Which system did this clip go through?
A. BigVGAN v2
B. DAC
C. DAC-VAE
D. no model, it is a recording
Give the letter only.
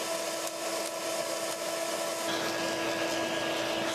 D